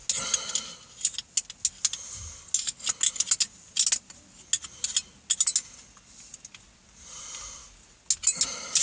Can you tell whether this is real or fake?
real